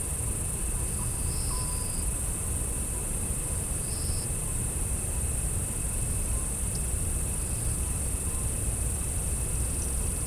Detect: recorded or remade recorded